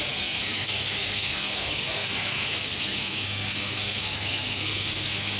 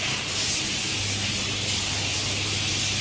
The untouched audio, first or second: second